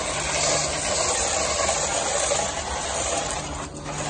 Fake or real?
real